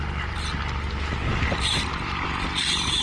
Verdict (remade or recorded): recorded